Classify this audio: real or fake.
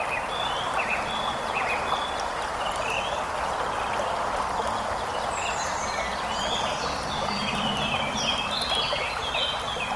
real